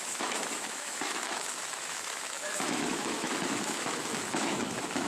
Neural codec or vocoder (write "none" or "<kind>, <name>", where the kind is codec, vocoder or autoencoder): autoencoder, DAC-VAE